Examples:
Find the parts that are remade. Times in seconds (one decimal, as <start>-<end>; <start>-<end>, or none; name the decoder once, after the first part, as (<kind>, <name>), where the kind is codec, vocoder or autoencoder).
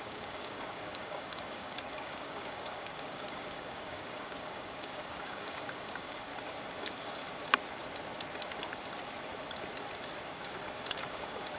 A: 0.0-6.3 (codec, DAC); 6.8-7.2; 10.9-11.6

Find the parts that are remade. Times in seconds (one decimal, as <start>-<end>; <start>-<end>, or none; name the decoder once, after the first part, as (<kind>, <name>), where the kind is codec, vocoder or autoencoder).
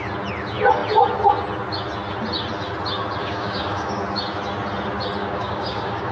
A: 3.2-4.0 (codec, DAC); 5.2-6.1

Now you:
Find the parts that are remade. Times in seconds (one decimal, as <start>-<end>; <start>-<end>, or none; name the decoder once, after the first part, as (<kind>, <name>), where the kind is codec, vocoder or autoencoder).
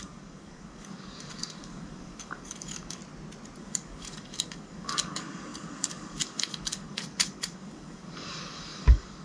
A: 0.0-3.0 (codec, DAC); 3.6-9.2